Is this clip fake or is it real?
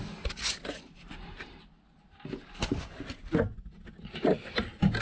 real